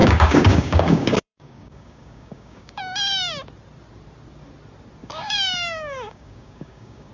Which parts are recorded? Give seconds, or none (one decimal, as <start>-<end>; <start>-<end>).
2.8-5.0